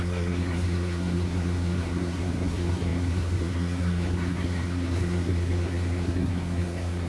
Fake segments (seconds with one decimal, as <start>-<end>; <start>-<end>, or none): 0.0-7.1